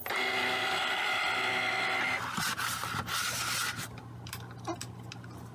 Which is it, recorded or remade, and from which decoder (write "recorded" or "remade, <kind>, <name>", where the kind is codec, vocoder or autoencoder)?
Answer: recorded